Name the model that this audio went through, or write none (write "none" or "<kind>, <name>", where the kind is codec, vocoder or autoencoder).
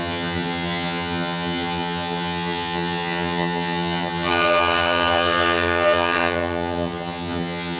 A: vocoder, HiFi-GAN